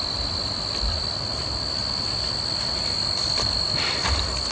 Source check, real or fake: real